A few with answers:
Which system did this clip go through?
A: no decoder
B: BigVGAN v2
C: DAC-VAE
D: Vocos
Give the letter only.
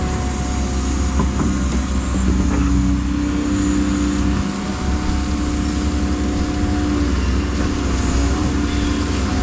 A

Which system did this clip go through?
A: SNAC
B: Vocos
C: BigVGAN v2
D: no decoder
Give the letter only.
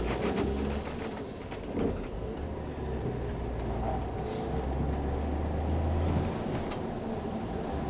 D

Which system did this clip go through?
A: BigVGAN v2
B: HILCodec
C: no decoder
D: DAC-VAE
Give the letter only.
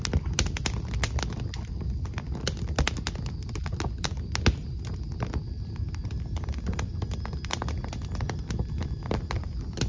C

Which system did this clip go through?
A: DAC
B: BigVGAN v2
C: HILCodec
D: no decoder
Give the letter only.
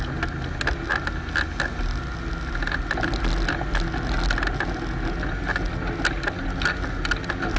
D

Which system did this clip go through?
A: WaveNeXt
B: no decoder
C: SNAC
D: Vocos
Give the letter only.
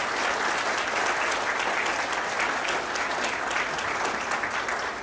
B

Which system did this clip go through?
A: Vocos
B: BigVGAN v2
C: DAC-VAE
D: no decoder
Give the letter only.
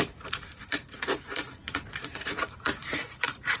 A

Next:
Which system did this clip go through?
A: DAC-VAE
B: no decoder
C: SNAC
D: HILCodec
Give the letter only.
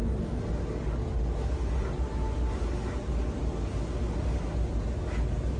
B